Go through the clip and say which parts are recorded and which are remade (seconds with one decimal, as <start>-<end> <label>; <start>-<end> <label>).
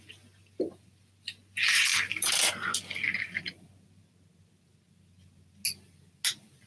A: 0.0-6.7 recorded